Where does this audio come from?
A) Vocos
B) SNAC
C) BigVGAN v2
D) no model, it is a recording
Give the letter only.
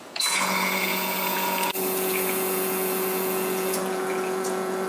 A